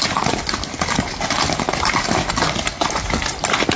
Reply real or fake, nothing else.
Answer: real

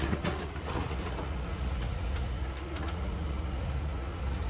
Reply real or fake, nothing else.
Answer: fake